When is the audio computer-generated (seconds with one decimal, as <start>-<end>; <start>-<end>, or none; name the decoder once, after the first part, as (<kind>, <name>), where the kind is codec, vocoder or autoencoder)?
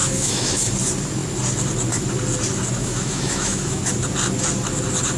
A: 0.0-0.6 (autoencoder, DAC-VAE); 2.8-3.8